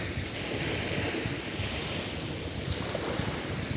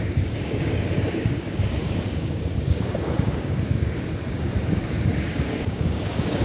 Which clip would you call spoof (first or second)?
second